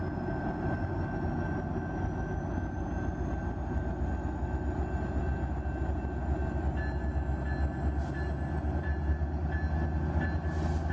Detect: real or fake real